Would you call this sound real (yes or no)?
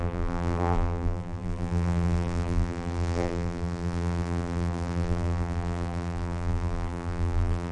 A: no